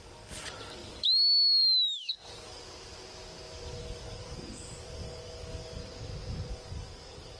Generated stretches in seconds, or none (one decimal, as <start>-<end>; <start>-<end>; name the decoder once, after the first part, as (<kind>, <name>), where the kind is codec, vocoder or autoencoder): 0.0-2.6 (codec, DAC); 3.8-5.8; 6.5-7.4